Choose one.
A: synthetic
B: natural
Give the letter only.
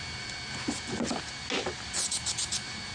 B